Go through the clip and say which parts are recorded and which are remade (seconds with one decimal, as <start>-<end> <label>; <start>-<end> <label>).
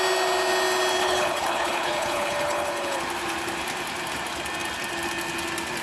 0.0-1.0 recorded; 1.0-3.0 remade; 3.0-5.8 recorded